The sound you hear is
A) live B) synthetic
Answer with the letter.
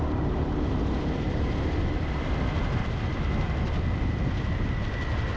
A